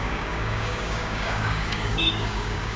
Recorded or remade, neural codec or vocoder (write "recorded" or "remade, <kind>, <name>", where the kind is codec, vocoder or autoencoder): remade, codec, DAC